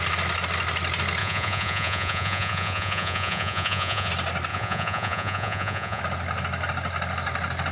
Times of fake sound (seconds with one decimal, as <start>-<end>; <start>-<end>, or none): 1.2-4.1; 4.5-6.0